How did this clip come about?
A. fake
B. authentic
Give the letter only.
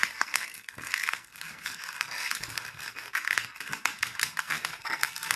A